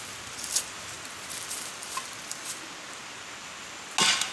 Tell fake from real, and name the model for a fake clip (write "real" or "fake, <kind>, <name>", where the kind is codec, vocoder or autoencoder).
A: real